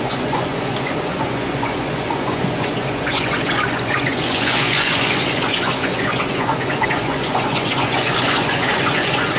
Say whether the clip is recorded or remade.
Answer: remade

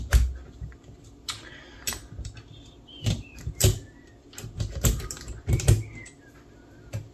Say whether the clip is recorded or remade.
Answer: recorded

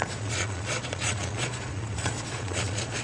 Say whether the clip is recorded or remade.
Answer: remade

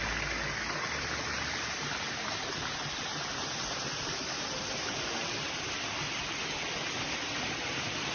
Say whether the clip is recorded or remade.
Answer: recorded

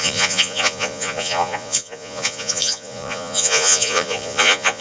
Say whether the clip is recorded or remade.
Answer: remade